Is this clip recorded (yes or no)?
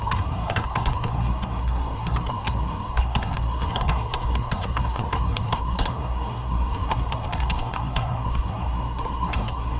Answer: no